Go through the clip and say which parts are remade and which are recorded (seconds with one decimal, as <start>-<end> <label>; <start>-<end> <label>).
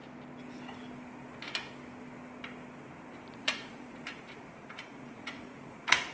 0.0-3.3 recorded; 3.3-6.1 remade